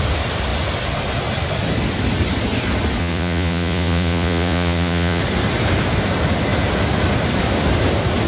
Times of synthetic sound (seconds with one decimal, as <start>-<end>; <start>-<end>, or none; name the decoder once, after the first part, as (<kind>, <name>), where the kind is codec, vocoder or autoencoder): 3.0-5.2 (vocoder, Vocos)